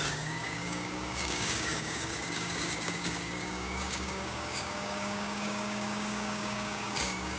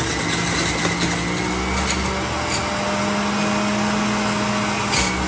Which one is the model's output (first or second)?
first